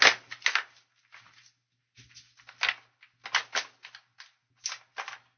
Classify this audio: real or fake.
real